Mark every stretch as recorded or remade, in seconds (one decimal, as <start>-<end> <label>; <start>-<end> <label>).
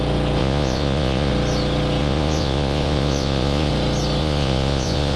0.0-0.4 recorded; 0.4-1.3 remade; 1.3-2.0 recorded; 2.0-3.7 remade; 3.7-4.2 recorded; 4.2-5.2 remade